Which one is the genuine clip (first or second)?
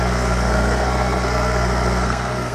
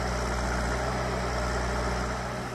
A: second